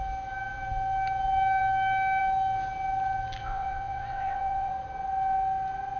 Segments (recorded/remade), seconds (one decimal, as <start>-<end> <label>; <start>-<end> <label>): 0.0-3.4 recorded; 3.4-4.7 remade; 4.7-6.0 recorded